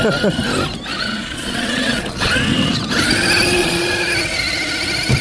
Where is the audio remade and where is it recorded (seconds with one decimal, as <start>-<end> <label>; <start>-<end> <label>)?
0.0-0.9 recorded; 0.9-2.3 remade; 2.3-3.6 recorded; 3.6-4.1 remade; 4.1-5.2 recorded